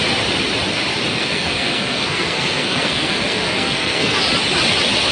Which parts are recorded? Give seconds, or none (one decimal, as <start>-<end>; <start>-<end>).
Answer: 0.0-1.1; 4.2-5.1